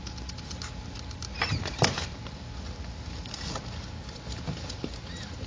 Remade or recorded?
recorded